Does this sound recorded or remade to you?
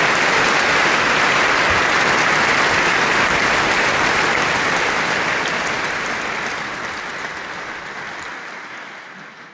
recorded